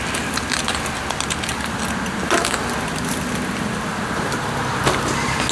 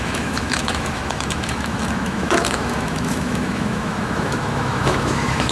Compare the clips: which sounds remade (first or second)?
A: second